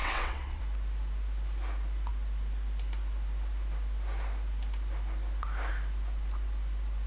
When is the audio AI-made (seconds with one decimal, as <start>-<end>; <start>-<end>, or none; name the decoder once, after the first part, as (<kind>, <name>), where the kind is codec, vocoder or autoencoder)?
0.0-0.6 (vocoder, WaveNeXt)